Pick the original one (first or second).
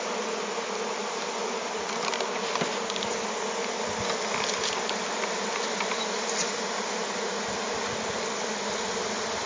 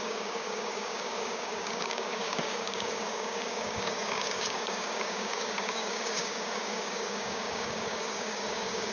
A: first